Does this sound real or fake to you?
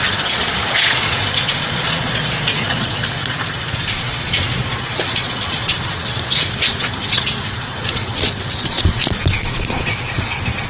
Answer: fake